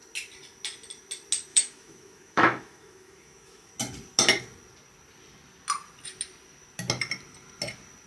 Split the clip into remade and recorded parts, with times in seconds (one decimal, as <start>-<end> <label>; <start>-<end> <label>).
0.0-1.5 recorded; 1.5-3.7 remade; 3.7-8.1 recorded